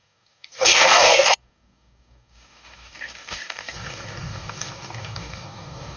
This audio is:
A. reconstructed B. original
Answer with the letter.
A